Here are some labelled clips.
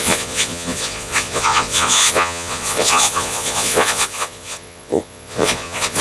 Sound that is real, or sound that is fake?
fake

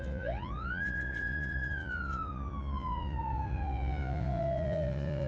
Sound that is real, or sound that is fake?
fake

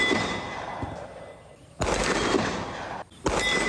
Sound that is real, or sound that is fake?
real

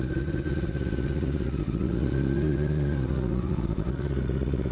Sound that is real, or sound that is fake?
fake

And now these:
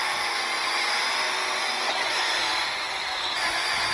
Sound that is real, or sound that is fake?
fake